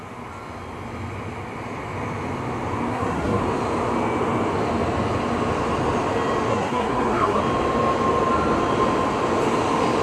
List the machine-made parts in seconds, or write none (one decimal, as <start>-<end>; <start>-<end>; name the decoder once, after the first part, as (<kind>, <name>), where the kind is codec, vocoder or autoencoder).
2.9-3.4 (codec, SNAC); 6.5-7.4